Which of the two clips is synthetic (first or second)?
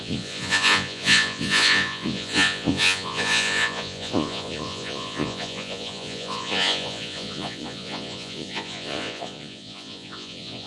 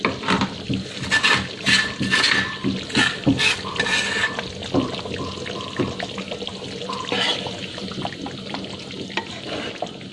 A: first